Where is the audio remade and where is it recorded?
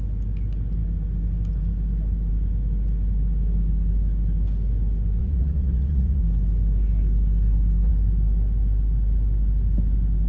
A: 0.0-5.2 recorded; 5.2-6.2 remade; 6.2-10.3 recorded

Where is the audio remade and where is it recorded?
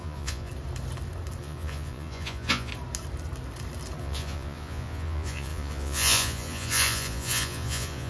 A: 0.0-0.5 remade; 0.5-1.4 recorded; 1.4-2.7 remade; 2.7-4.0 recorded; 4.0-8.1 remade